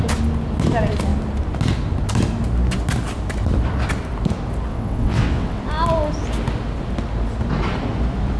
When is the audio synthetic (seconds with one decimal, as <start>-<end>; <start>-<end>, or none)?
4.7-5.6